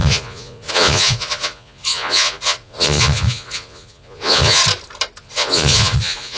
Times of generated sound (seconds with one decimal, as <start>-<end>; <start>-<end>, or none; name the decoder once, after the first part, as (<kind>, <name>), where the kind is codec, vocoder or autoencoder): 0.0-4.6 (vocoder, Vocos); 5.2-6.4